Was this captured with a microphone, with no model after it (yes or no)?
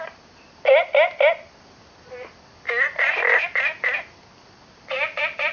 yes